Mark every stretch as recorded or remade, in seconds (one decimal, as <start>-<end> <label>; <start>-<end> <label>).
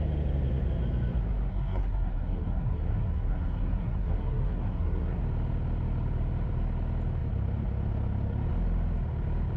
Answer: 0.0-1.5 recorded; 1.5-5.2 remade; 5.2-9.6 recorded